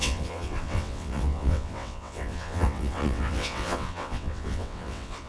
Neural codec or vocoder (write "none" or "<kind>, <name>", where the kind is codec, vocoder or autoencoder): vocoder, WaveNeXt